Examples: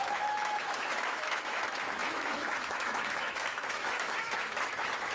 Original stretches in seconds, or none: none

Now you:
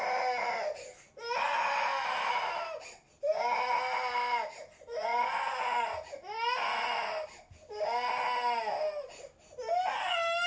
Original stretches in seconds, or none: 0.0-10.5